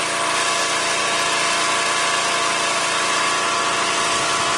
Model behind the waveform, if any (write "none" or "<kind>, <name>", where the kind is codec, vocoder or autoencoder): none